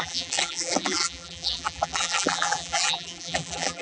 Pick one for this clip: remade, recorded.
remade